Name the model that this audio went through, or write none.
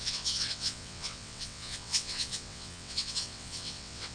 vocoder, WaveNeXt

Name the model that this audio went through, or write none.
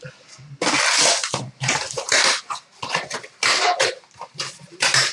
none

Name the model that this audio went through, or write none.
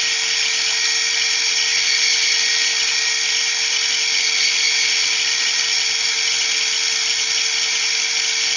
none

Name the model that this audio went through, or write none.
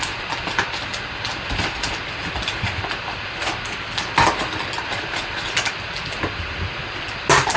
none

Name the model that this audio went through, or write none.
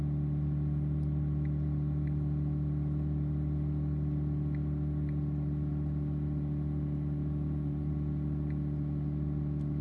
none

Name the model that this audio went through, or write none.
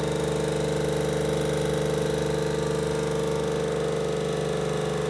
none